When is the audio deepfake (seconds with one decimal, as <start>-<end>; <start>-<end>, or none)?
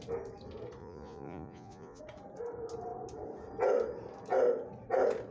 0.8-2.0